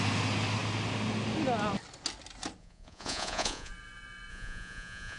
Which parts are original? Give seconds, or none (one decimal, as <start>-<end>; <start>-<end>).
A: 0.0-2.6; 3.7-4.3